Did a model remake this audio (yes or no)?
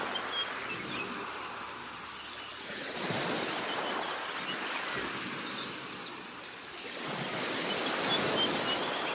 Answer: no